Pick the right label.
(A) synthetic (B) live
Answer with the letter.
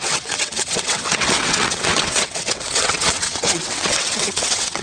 A